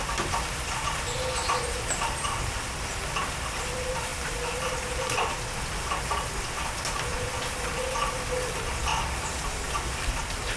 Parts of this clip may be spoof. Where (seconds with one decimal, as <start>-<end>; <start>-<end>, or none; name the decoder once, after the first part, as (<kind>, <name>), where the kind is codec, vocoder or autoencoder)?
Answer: 4.1-5.3 (vocoder, BigVGAN v2); 8.9-9.5